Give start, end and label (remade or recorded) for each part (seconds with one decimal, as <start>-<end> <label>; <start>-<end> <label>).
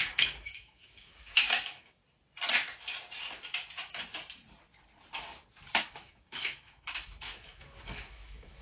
0.0-2.0 remade; 2.0-5.8 recorded; 5.8-8.6 remade